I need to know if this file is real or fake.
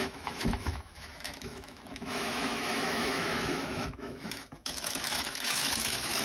fake